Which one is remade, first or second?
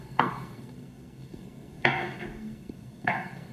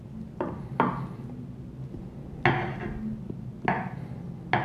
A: first